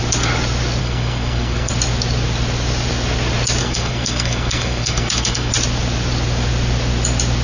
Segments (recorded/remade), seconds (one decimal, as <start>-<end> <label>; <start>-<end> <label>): 0.0-0.8 recorded; 0.8-1.7 remade; 1.7-3.6 recorded; 3.6-5.5 remade; 5.5-7.4 recorded